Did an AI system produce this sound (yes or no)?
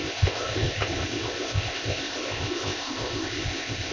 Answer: yes